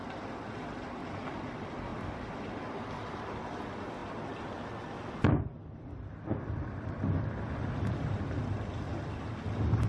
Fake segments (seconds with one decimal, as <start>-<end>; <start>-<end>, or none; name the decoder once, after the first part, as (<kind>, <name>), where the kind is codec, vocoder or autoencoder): none